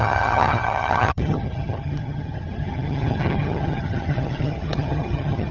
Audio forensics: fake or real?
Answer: fake